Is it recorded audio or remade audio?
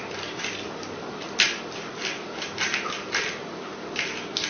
recorded